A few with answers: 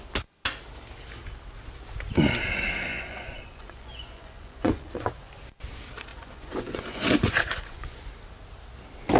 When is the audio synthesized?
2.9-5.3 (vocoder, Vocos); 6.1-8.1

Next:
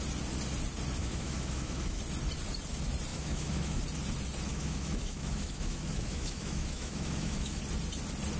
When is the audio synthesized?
1.0-2.0 (autoencoder, DAC-VAE); 3.1-3.8; 4.5-7.6

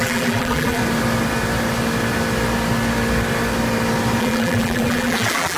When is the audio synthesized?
0.0-0.8 (vocoder, BigVGAN v2); 4.2-5.6